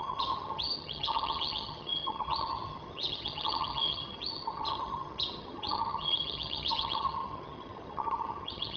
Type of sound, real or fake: fake